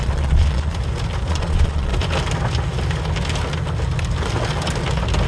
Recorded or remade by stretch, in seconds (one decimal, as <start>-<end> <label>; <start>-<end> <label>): 0.0-0.7 remade; 0.7-1.3 recorded; 1.3-1.9 remade; 1.9-5.3 recorded